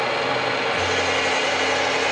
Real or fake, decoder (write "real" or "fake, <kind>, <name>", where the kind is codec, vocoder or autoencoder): real